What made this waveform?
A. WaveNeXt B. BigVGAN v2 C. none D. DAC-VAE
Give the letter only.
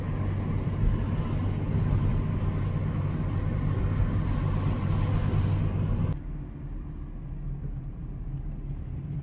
C